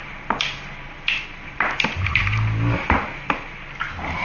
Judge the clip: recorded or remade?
recorded